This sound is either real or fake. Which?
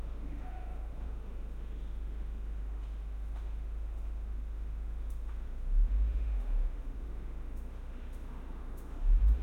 fake